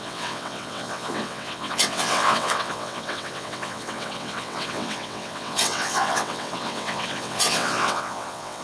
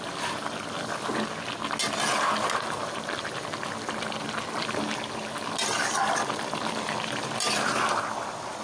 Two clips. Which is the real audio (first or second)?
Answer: second